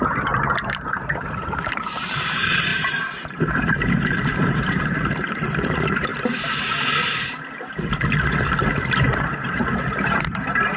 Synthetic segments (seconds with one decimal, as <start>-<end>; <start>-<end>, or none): 0.0-6.1; 9.1-10.8